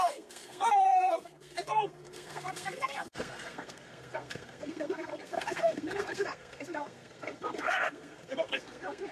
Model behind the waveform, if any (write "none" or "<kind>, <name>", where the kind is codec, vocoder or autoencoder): codec, SNAC